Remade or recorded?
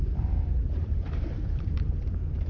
remade